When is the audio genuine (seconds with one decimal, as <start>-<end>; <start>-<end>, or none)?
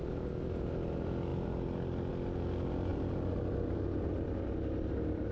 0.0-5.3